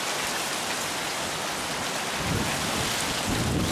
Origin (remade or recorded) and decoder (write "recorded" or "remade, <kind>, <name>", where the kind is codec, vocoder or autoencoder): recorded